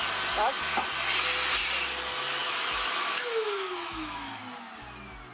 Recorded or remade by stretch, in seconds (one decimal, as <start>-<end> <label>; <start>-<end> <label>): 0.0-2.4 recorded; 2.4-4.4 remade; 4.4-5.3 recorded